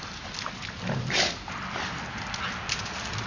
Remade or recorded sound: recorded